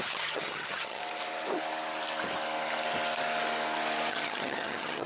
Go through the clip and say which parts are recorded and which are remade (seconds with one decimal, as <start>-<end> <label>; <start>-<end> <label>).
0.0-1.0 remade; 1.0-4.1 recorded; 4.1-5.1 remade